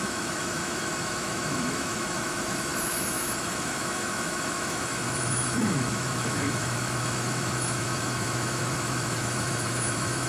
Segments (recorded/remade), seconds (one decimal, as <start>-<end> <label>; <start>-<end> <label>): 0.0-10.3 remade